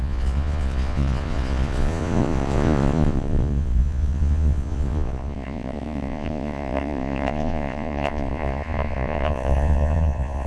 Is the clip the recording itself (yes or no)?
no